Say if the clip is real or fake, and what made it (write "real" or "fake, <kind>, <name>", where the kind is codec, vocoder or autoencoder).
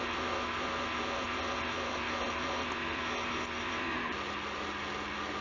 real